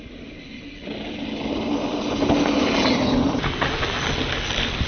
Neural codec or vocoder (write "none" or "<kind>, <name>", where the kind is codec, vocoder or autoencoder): none